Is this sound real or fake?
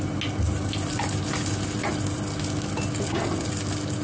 real